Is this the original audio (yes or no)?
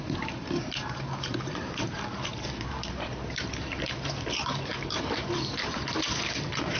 no